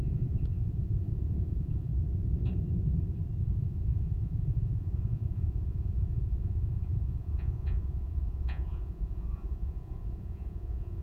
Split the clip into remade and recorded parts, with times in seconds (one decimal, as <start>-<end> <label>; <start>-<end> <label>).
0.0-1.9 remade; 1.9-3.4 recorded; 3.4-11.0 remade